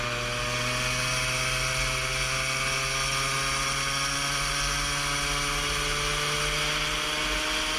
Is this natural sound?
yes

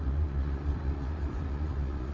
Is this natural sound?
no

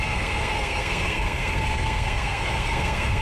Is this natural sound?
no